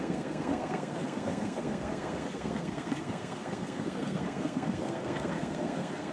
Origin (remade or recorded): remade